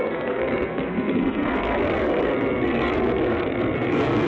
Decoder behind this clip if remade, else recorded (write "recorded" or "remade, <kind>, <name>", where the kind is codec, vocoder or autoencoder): remade, codec, SNAC